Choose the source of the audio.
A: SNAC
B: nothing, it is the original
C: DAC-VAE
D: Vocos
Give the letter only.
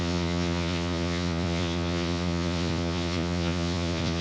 D